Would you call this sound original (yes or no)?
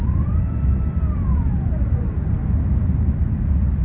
yes